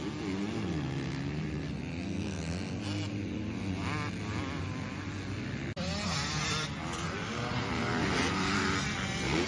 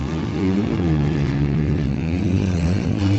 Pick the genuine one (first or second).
first